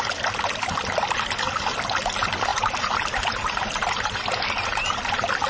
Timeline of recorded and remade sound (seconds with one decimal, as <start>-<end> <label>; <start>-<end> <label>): 0.0-2.5 recorded; 2.5-5.1 remade; 5.1-5.5 recorded